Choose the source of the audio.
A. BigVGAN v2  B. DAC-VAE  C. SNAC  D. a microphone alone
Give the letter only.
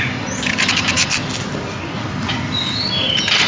D